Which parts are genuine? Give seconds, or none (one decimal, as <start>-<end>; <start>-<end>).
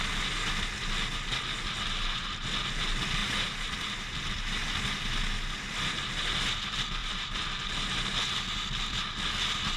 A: 0.0-7.0; 7.7-9.8